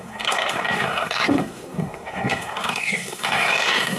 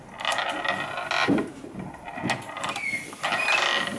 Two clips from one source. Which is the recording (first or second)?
second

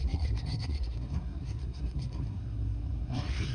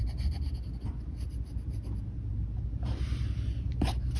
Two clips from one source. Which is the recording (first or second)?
second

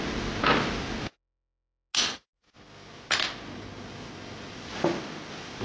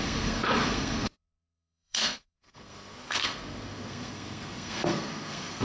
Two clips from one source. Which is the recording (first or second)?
first